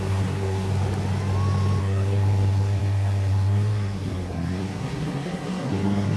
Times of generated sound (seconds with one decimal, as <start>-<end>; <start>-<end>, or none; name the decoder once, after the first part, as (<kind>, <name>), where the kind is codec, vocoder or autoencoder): 0.0-0.7 (codec, SNAC); 1.8-6.2

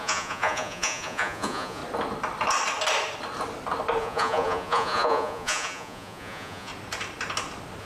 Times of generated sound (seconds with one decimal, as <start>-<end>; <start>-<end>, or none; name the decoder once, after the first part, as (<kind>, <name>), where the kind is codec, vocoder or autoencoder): 0.0-1.8 (vocoder, Vocos); 4.0-6.7

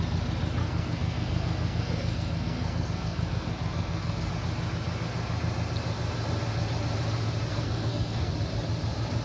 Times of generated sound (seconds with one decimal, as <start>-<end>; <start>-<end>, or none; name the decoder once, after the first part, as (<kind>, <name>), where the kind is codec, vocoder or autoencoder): 0.6-4.3 (codec, SNAC); 7.5-8.3

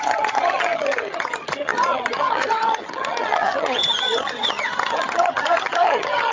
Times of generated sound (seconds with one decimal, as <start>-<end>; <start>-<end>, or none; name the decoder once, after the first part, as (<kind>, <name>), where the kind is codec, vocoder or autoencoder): 0.0-6.3 (vocoder, HiFi-GAN)